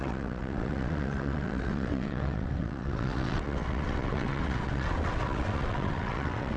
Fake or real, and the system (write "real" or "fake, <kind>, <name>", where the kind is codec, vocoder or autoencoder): fake, vocoder, WaveNeXt